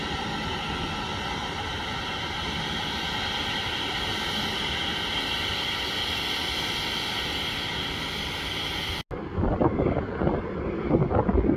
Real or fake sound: real